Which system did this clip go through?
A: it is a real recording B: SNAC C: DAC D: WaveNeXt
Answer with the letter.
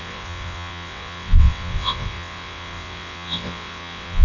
D